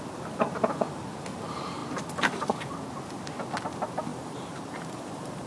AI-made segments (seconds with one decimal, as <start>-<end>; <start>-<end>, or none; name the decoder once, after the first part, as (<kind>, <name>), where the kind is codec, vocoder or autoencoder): 4.1-5.5 (vocoder, BigVGAN v2)